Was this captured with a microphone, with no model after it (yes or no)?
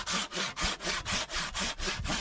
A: yes